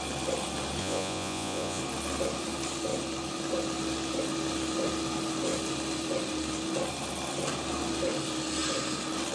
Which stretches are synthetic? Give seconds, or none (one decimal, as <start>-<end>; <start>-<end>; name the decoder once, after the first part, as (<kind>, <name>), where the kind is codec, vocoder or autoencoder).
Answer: 0.8-1.8 (vocoder, Vocos)